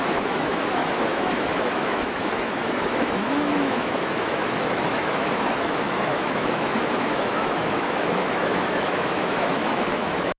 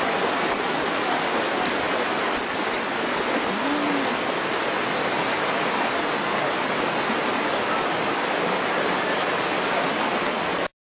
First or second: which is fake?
first